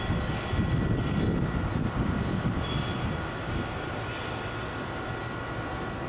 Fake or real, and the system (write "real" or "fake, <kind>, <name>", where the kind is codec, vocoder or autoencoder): real